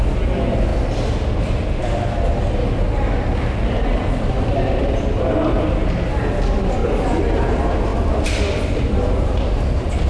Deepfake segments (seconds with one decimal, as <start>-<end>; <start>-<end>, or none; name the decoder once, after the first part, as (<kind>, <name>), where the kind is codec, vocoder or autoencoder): none